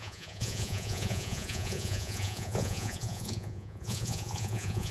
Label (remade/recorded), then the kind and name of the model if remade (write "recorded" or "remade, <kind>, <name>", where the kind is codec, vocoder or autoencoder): remade, vocoder, Vocos